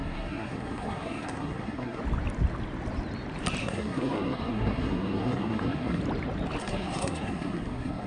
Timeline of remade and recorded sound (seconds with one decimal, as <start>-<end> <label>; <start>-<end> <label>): 0.0-2.0 remade; 2.0-3.6 recorded; 3.6-6.0 remade; 6.0-6.6 recorded; 6.6-8.1 remade